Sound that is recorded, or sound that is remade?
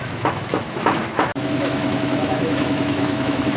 remade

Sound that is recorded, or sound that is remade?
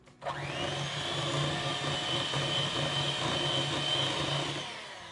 recorded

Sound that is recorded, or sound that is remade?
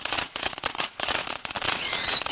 remade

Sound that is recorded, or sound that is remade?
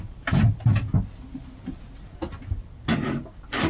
recorded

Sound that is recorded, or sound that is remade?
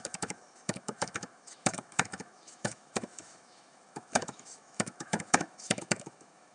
remade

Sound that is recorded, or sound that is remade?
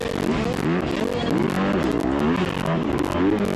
recorded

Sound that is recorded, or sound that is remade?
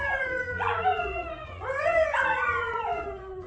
remade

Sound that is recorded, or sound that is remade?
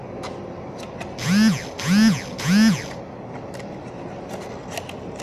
recorded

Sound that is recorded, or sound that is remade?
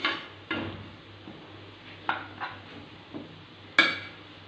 recorded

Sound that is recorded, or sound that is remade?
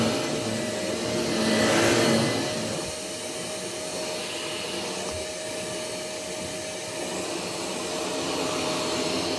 recorded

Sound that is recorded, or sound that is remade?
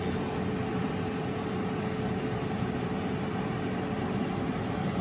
recorded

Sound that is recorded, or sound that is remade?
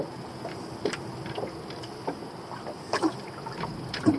recorded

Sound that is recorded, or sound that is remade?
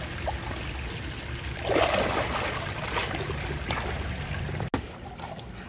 recorded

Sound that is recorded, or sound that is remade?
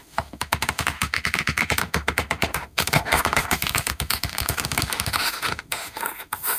remade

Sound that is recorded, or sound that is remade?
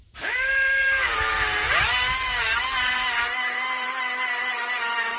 remade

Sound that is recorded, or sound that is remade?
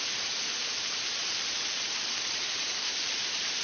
remade